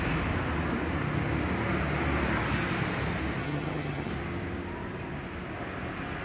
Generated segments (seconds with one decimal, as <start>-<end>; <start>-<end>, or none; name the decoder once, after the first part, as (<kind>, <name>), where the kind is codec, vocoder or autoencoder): 3.4-4.1 (vocoder, HiFi-GAN)